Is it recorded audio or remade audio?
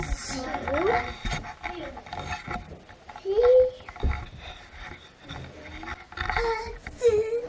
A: recorded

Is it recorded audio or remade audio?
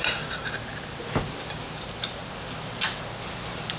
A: recorded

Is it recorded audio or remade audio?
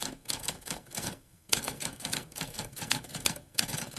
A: remade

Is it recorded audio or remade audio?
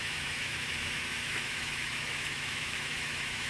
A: remade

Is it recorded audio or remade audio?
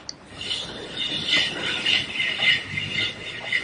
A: recorded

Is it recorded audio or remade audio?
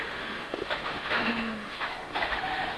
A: remade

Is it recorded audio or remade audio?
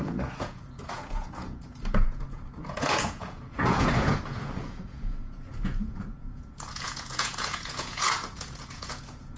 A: remade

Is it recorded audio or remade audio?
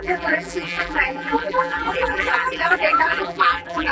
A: remade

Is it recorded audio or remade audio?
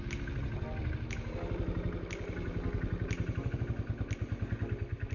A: recorded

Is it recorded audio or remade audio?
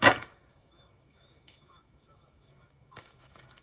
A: remade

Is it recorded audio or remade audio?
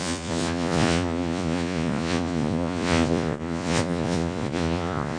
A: remade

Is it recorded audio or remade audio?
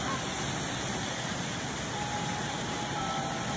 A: recorded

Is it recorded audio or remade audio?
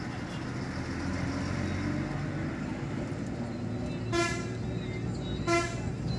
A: recorded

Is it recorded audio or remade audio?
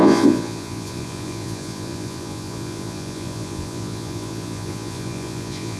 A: remade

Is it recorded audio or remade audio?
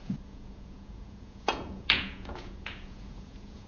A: remade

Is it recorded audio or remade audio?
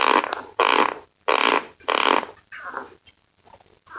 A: recorded